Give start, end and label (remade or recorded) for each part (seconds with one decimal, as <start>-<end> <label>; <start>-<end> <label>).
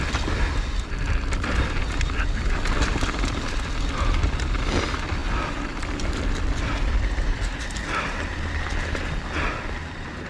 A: 0.0-10.3 recorded